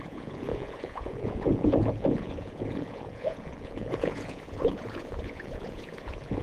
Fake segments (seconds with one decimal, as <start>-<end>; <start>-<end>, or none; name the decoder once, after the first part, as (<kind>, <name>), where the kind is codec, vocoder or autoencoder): 0.0-6.4 (vocoder, Vocos)